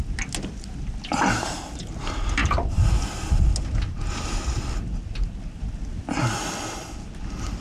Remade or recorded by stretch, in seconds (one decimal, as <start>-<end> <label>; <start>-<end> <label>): 0.0-7.6 recorded